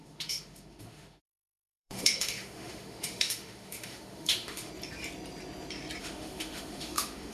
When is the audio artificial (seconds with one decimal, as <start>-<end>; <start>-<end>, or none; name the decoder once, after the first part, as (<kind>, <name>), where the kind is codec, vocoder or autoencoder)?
0.0-4.7 (autoencoder, DAC-VAE); 6.0-7.3